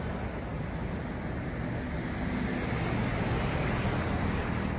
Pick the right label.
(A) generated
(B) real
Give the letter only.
B